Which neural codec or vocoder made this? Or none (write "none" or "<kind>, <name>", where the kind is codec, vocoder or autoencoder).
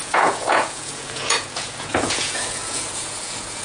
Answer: vocoder, Vocos